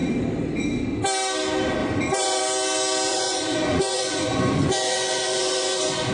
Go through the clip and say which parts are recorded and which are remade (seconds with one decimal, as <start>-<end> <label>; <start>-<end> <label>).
0.0-1.8 recorded; 1.8-2.4 remade; 2.4-3.1 recorded; 3.1-6.1 remade